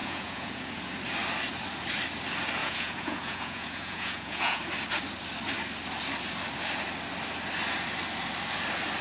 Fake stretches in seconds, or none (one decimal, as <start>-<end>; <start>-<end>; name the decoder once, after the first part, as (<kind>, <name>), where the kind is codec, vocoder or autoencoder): 0.0-0.8 (vocoder, Vocos); 2.6-4.6